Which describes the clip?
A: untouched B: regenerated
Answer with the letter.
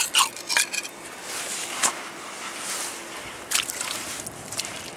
A